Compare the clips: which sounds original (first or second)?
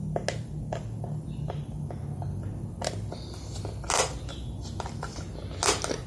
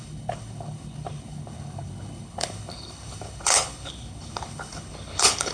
first